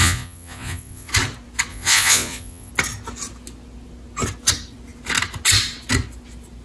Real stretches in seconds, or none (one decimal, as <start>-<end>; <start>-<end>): 1.1-1.7; 2.7-6.6